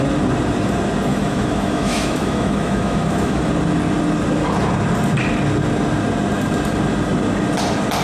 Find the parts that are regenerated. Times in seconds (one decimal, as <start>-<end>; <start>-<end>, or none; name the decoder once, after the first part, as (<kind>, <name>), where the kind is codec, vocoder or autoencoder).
1.1-3.5 (autoencoder, DAC-VAE)